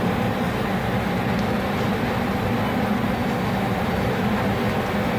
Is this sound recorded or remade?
recorded